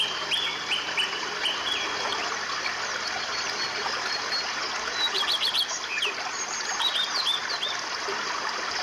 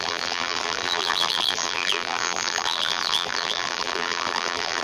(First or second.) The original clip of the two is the first